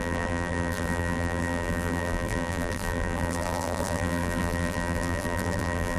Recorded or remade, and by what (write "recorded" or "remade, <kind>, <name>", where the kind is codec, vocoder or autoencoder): remade, vocoder, BigVGAN v2